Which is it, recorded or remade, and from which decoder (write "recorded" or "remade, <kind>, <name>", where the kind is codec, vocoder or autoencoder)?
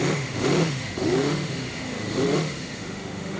remade, autoencoder, DAC-VAE